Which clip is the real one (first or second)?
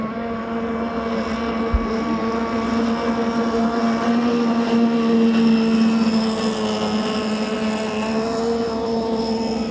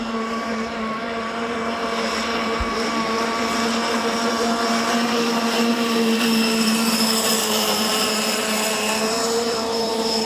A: first